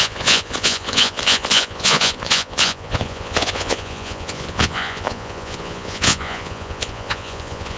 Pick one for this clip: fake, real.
fake